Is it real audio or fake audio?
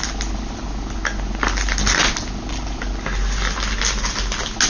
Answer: real